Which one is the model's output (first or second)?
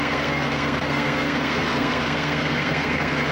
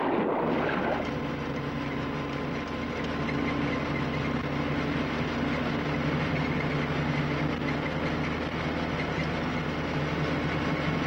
first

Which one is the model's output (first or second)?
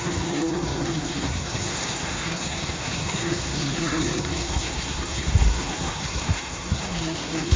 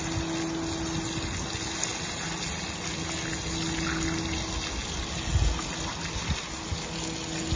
first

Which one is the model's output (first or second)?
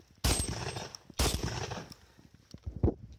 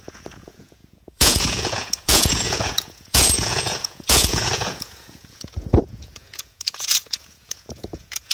second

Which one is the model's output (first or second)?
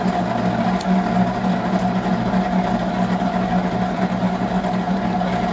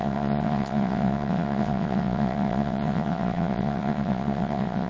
second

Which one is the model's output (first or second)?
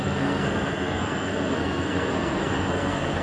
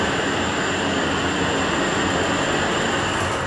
first